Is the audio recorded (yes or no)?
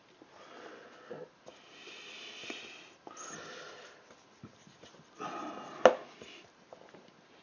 yes